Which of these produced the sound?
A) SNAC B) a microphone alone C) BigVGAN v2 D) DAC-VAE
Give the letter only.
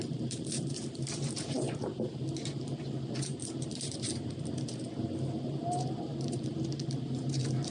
C